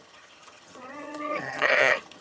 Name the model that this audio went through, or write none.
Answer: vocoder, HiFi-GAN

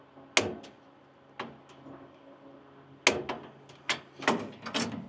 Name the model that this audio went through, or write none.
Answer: none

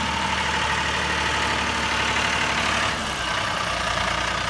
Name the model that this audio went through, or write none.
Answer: none